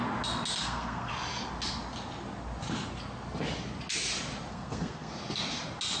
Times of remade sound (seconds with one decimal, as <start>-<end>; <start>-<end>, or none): 0.6-1.1; 4.5-5.1

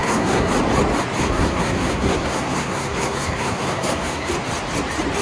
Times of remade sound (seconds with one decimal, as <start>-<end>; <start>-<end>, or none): 0.0-0.5; 1.2-4.3

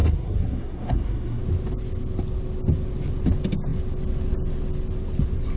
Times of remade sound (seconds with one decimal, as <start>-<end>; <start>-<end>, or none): 0.0-1.4

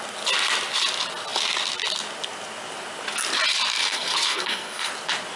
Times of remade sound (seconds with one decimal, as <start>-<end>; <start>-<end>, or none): 3.8-4.9

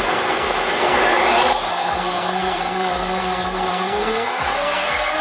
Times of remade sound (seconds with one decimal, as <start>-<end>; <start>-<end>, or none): 0.0-1.0; 1.7-5.2

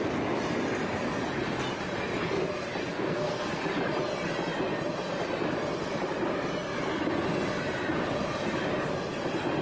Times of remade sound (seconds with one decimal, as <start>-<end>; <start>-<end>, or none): 2.8-3.6

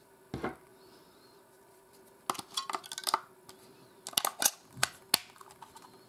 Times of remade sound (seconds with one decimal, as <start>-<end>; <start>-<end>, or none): none

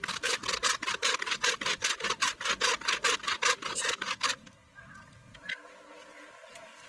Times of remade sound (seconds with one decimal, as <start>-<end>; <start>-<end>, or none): none